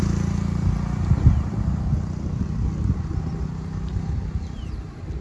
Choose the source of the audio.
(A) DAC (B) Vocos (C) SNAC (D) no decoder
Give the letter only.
D